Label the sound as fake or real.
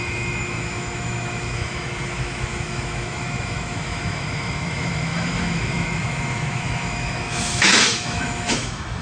fake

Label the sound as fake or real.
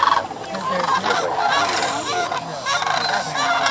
real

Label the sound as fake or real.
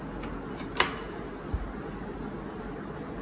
real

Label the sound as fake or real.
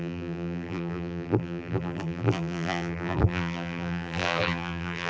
fake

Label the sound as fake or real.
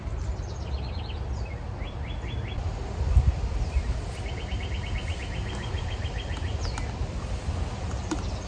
real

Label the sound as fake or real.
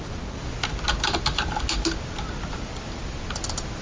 real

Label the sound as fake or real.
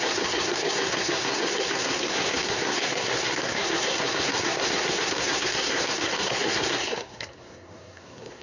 fake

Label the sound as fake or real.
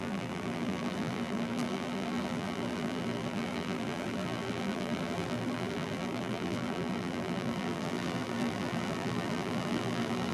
fake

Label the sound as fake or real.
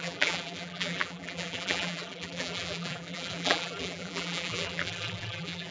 fake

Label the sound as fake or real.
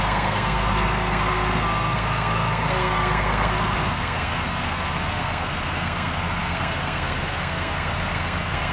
fake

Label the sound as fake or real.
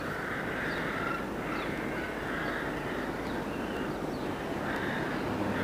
real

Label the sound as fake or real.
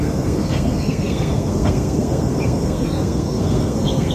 fake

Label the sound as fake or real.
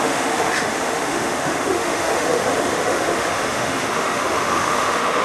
fake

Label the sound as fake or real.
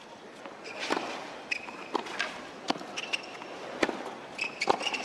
real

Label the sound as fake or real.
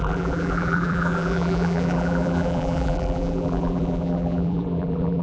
fake